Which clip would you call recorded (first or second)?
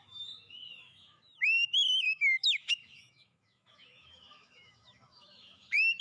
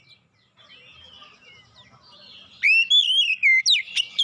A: second